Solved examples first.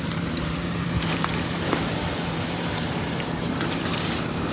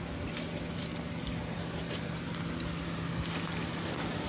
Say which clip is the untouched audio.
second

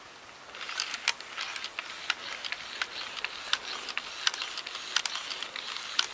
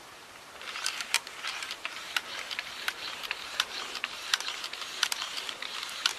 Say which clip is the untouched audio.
first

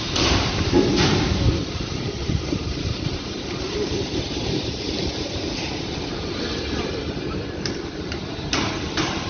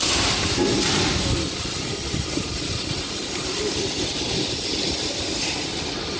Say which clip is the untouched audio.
second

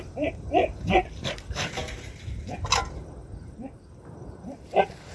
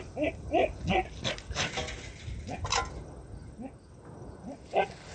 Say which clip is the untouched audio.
second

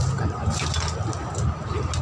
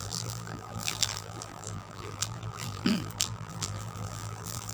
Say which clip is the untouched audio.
first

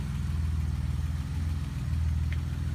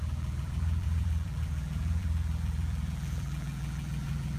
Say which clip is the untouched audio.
first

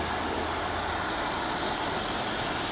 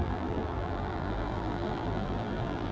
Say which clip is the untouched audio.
first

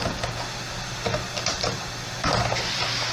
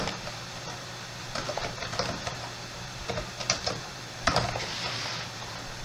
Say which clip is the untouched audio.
first